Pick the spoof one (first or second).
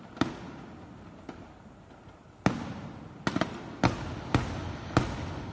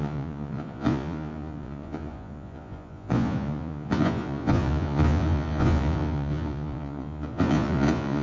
second